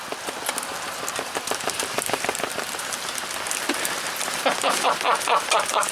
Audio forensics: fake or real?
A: real